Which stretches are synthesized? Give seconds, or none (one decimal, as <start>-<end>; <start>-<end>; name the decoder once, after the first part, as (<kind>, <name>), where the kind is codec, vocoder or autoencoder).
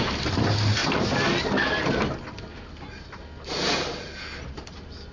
none